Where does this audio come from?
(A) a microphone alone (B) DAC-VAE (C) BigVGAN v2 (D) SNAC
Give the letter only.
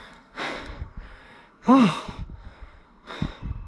D